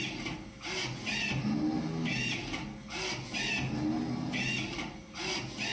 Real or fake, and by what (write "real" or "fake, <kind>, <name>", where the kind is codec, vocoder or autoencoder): real